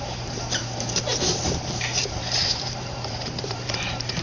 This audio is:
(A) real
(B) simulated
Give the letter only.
B